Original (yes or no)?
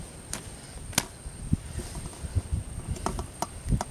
yes